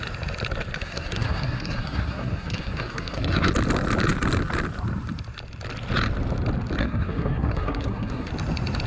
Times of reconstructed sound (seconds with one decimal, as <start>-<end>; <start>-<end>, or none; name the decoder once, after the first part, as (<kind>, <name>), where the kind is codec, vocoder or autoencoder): 0.7-3.5 (codec, SNAC); 6.8-8.3